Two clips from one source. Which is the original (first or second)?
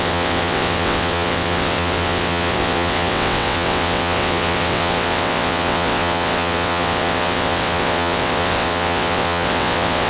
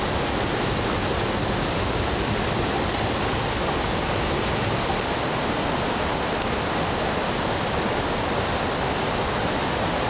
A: second